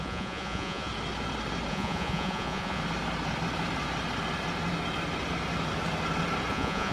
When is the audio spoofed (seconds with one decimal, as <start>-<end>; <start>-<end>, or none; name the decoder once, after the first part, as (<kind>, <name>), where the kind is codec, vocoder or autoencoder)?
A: 0.0-0.9 (vocoder, Vocos); 1.7-2.8; 6.5-6.9